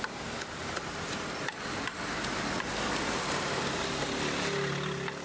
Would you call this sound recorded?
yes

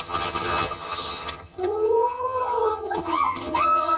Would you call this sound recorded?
no